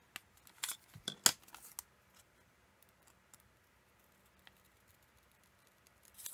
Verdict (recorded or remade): recorded